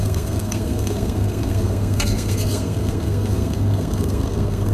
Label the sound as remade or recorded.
remade